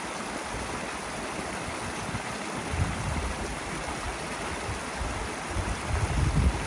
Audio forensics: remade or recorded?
recorded